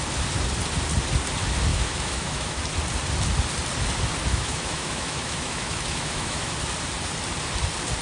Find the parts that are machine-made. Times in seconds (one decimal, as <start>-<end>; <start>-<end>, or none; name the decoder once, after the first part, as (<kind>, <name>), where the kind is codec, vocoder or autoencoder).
1.7-2.6 (autoencoder, DAC-VAE); 4.3-6.5